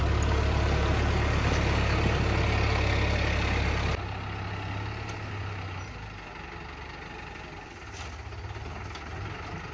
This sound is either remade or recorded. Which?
recorded